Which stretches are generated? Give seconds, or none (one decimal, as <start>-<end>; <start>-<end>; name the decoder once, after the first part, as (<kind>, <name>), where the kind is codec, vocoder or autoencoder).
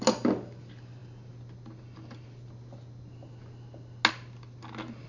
none